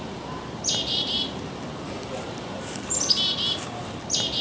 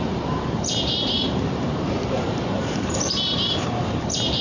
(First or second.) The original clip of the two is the first